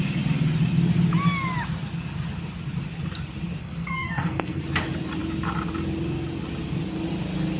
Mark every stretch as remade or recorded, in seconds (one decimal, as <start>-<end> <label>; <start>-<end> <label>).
0.0-3.6 recorded; 3.6-4.6 remade; 4.6-7.6 recorded